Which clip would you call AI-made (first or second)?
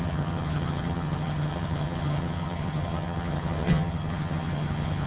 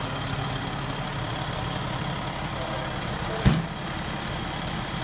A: first